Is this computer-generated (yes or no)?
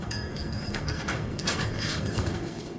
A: yes